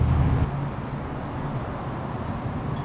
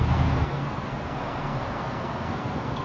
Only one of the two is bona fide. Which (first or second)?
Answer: first